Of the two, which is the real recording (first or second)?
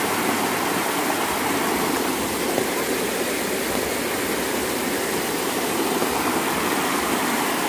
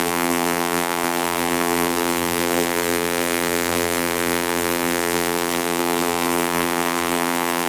first